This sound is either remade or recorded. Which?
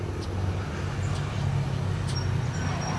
recorded